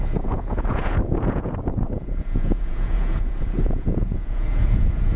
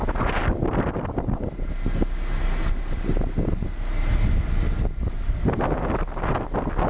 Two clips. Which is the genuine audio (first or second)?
second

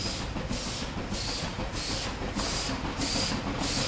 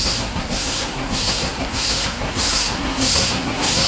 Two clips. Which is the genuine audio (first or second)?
first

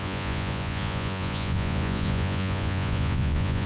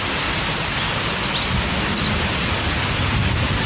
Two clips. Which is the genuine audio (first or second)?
second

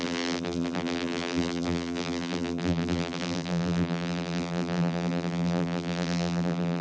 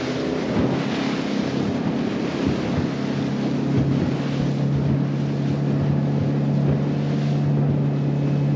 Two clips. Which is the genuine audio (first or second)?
second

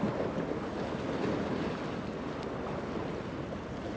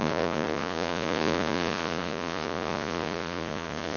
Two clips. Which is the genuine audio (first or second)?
first